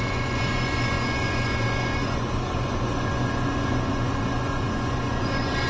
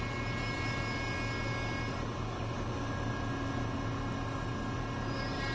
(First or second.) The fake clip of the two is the first